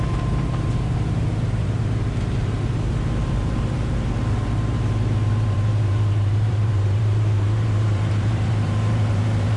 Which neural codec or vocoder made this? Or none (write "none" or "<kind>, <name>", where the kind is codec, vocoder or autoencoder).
vocoder, BigVGAN v2